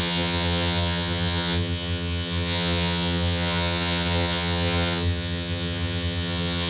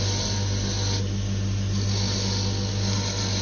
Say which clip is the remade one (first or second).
first